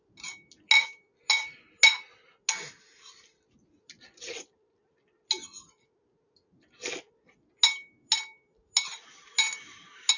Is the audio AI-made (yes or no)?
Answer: no